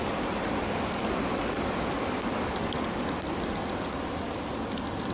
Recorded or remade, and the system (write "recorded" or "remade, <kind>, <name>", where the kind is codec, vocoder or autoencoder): recorded